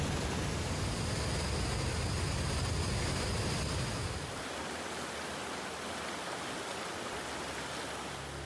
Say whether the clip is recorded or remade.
recorded